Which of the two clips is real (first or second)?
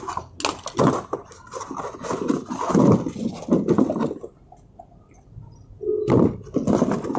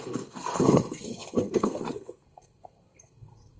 first